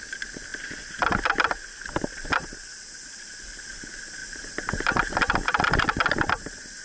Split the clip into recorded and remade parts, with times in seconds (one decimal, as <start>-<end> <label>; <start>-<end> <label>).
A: 0.0-0.5 recorded; 0.5-2.6 remade; 2.6-4.2 recorded; 4.2-6.0 remade; 6.0-6.8 recorded